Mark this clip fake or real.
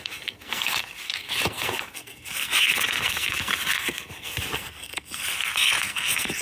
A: fake